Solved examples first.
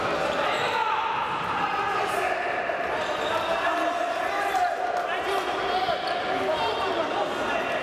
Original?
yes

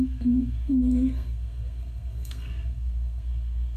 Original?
no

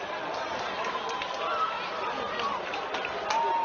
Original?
yes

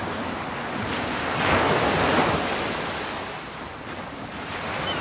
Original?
yes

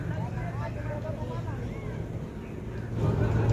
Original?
yes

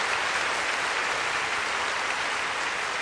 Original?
yes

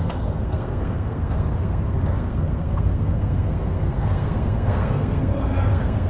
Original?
no